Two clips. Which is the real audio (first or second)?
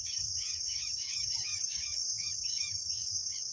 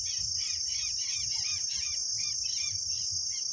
second